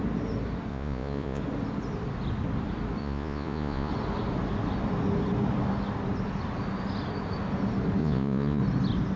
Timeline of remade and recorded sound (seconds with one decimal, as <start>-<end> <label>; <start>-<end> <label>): 0.0-0.7 recorded; 0.7-1.4 remade; 1.4-3.0 recorded; 3.0-3.9 remade; 3.9-8.0 recorded; 8.0-8.6 remade; 8.6-9.2 recorded